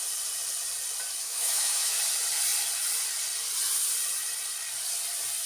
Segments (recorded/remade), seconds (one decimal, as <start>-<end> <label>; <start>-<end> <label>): 0.0-1.2 recorded; 1.2-2.0 remade; 2.0-5.5 recorded